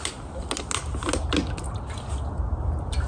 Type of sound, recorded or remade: recorded